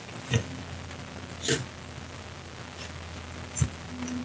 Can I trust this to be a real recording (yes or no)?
yes